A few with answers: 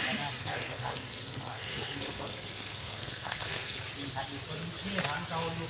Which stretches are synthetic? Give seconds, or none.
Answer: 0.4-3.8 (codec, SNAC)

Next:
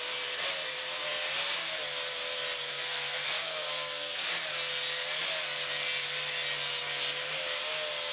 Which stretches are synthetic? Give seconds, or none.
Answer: 2.7-4.3 (codec, SNAC)

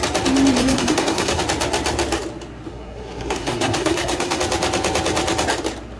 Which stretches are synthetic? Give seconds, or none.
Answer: 0.6-1.4 (codec, SNAC); 2.7-4.4

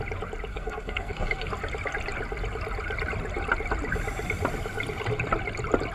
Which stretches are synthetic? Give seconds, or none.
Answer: 0.5-1.5 (codec, SNAC)

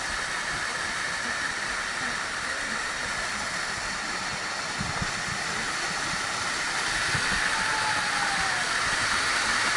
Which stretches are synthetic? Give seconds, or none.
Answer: none

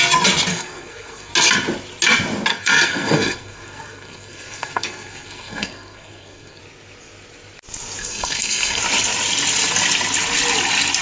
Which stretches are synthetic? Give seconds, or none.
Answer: 0.5-1.3 (codec, SNAC); 2.5-6.6; 8.0-8.8